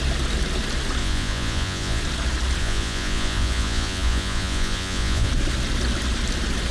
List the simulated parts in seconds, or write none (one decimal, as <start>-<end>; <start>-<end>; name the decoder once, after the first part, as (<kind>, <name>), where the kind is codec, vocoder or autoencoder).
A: 1.0-2.0 (vocoder, Vocos); 2.6-5.3